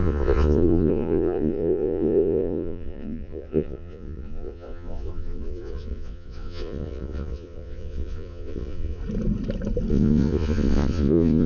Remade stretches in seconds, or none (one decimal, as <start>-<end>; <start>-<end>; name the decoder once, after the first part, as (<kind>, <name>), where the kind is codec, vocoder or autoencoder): 0.0-9.0 (vocoder, Vocos); 9.9-11.5

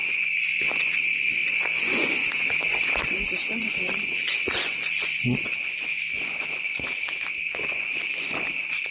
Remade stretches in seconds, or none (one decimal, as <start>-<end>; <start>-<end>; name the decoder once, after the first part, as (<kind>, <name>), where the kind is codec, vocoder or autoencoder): 0.0-8.9 (vocoder, Vocos)

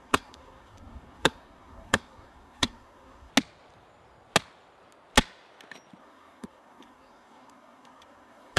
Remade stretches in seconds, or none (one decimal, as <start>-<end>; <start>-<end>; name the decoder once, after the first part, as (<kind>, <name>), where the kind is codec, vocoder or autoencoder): 0.0-3.3 (codec, SNAC); 6.0-8.6

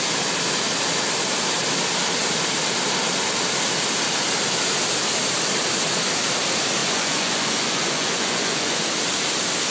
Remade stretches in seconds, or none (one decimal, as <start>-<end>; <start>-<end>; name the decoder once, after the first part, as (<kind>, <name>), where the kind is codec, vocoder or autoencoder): 6.8-8.8 (vocoder, Vocos)

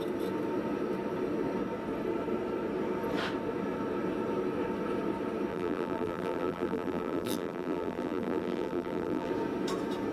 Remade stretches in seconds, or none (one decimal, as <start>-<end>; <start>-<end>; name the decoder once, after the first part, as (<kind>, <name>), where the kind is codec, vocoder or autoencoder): 5.5-9.3 (vocoder, BigVGAN v2)

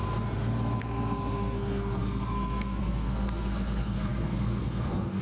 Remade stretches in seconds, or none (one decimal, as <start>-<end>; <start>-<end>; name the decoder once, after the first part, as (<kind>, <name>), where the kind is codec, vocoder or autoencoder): 0.8-5.2 (codec, SNAC)

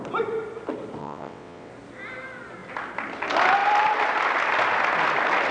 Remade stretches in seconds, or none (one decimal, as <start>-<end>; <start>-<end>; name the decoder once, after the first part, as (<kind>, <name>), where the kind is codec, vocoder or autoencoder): 1.0-1.7 (vocoder, WaveNeXt)